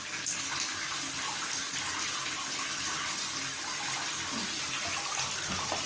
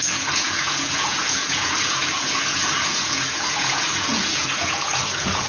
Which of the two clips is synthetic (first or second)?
second